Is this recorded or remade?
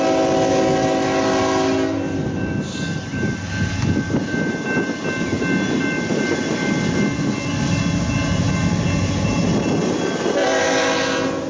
recorded